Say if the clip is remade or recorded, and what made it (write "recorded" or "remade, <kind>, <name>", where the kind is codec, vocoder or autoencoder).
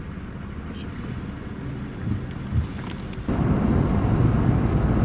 recorded